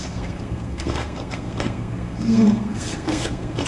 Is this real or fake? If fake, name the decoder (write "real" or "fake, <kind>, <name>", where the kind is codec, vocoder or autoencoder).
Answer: fake, codec, SNAC